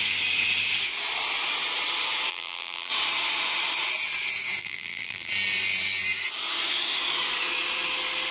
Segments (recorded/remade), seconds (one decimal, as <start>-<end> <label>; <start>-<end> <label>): 0.0-2.3 recorded; 2.3-2.9 remade; 2.9-4.6 recorded; 4.6-5.3 remade; 5.3-8.3 recorded